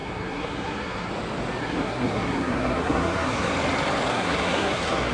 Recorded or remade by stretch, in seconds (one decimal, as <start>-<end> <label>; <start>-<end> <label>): 0.0-1.1 remade; 1.1-1.6 recorded; 1.6-3.5 remade; 3.5-4.1 recorded; 4.1-5.1 remade